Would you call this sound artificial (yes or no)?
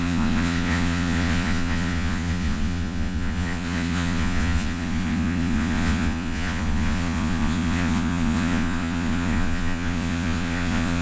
yes